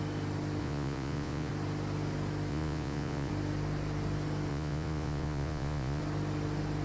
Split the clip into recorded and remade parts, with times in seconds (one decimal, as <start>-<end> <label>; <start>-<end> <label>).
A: 0.0-0.6 recorded; 0.6-1.5 remade; 1.5-2.5 recorded; 2.5-3.3 remade; 3.3-4.5 recorded; 4.5-6.0 remade; 6.0-6.8 recorded